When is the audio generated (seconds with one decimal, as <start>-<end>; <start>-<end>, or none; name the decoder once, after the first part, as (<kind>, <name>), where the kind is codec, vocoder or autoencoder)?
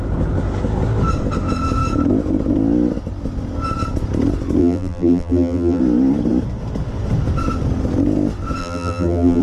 4.6-5.8 (vocoder, BigVGAN v2); 8.6-9.4